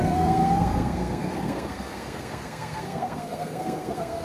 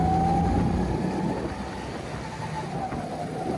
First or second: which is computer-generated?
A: first